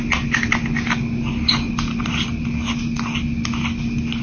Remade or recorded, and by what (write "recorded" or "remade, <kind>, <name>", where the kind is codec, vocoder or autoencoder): recorded